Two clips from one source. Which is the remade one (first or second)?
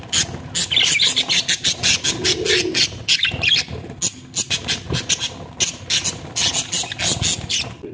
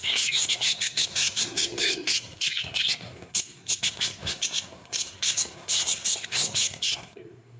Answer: second